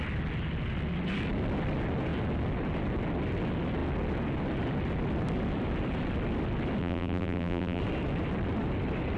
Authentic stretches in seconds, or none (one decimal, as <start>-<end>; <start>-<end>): 0.0-6.8; 7.8-9.2